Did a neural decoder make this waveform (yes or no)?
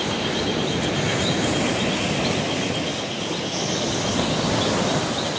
no